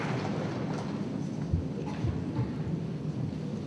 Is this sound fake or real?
real